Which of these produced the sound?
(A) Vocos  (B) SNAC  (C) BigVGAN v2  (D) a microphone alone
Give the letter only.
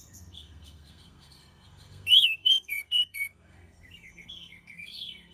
B